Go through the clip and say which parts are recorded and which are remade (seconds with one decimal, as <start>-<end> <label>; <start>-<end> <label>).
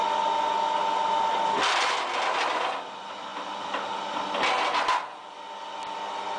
0.0-6.4 recorded